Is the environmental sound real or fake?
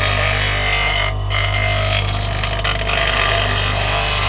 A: real